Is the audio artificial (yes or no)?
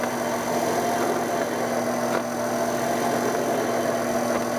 no